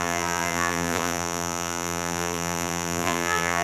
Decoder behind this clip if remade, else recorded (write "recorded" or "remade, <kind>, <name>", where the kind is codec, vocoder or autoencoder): remade, vocoder, BigVGAN v2